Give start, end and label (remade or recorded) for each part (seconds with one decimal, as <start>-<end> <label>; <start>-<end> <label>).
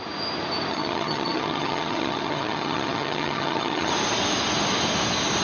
0.0-0.7 recorded; 0.7-3.9 remade; 3.9-5.4 recorded